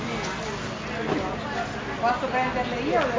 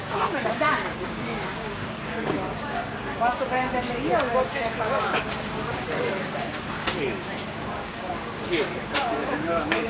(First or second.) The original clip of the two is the first